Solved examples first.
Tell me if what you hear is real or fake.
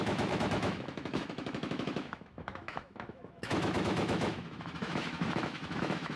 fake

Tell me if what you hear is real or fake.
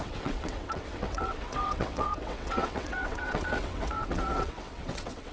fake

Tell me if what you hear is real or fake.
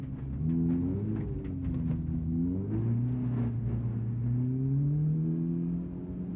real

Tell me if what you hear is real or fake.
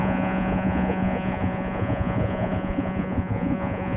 fake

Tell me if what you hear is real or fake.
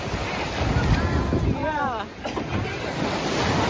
real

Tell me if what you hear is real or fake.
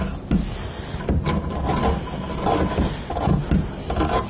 real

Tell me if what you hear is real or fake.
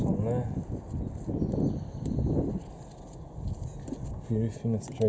real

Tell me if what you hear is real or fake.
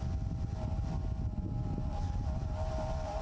fake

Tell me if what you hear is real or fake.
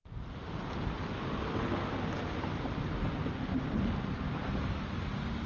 real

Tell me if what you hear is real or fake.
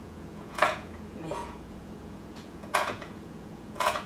fake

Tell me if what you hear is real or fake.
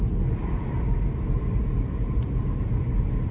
real